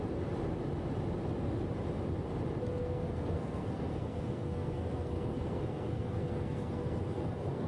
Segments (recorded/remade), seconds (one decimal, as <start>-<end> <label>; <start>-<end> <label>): 0.0-2.8 recorded; 2.8-7.7 remade